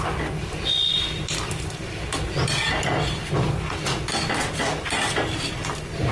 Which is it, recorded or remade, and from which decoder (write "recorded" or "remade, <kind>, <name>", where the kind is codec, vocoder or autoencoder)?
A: recorded